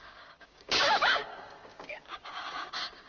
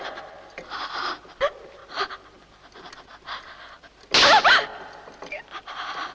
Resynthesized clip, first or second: first